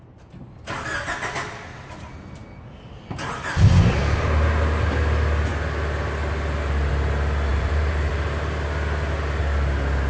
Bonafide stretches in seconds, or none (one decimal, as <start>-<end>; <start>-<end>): 0.0-7.5; 8.1-10.1